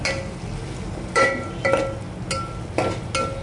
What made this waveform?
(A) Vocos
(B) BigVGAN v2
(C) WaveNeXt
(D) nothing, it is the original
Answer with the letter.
D